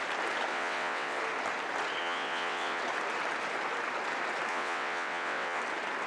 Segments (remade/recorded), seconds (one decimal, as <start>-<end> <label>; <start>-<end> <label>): 0.0-0.5 recorded; 0.5-1.2 remade; 1.2-2.0 recorded; 2.0-2.8 remade; 2.8-4.5 recorded; 4.5-5.6 remade; 5.6-6.1 recorded